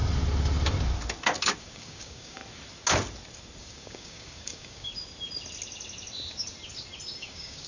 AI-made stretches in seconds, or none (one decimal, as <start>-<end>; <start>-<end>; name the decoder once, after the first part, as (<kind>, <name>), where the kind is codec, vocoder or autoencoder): 1.6-2.4 (codec, DAC); 3.6-4.9; 7.2-7.7